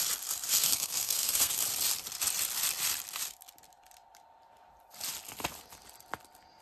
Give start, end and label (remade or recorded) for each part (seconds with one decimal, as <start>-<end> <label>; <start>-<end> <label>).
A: 0.0-0.5 recorded; 0.5-1.6 remade; 1.6-6.6 recorded